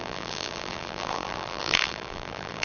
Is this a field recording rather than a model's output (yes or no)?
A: no